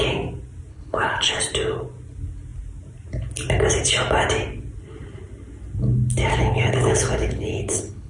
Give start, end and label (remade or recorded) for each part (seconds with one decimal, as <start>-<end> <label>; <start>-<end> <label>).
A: 0.0-0.7 recorded; 0.7-1.4 remade; 1.4-6.3 recorded; 6.3-8.1 remade